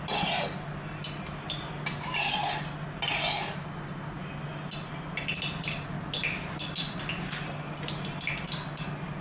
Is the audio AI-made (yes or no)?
no